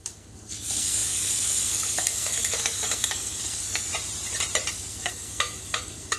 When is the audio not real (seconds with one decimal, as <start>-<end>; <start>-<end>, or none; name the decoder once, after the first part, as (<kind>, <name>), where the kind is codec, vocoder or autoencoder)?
0.0-3.9 (codec, SNAC); 4.7-6.2